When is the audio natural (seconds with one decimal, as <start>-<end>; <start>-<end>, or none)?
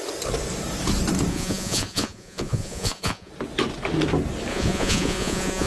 0.0-1.3; 3.3-4.5